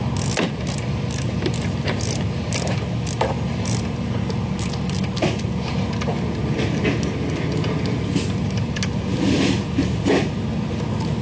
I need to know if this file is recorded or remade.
recorded